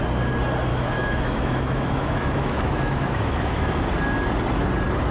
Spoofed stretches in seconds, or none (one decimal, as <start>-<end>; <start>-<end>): 0.7-3.8